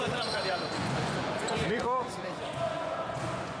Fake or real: fake